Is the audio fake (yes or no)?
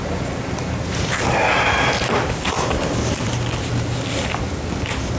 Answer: no